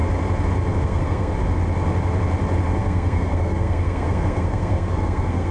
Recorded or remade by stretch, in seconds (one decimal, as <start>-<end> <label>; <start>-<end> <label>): 0.0-0.8 recorded; 0.8-1.3 remade; 1.3-2.8 recorded; 2.8-5.5 remade